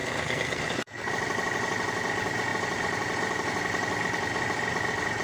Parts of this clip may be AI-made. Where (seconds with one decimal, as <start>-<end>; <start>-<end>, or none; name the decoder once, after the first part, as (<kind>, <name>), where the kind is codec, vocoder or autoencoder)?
0.0-1.1 (codec, SNAC)